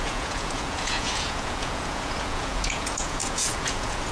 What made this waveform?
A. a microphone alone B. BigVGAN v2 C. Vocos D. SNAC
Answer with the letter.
C